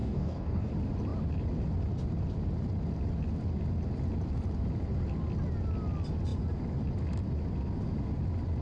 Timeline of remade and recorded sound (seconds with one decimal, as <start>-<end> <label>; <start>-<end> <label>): 0.0-0.7 remade; 0.7-8.6 recorded